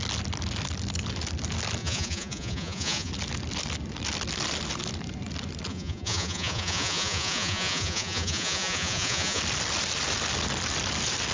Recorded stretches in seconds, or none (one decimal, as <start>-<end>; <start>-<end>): 0.0-1.8; 3.1-5.7; 9.4-11.3